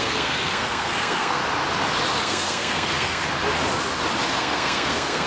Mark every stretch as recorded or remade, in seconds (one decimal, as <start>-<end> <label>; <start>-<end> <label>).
0.0-1.4 remade; 1.4-2.2 recorded; 2.2-3.2 remade; 3.2-4.4 recorded; 4.4-5.3 remade